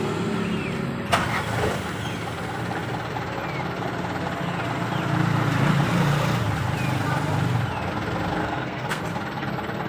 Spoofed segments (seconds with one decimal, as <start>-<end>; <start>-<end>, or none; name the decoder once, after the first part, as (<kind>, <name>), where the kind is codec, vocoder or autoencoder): 8.4-9.0 (codec, SNAC)